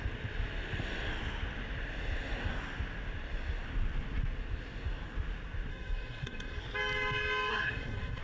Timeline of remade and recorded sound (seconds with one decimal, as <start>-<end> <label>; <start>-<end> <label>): 0.0-5.7 recorded; 5.7-6.6 remade; 6.6-7.5 recorded; 7.5-8.2 remade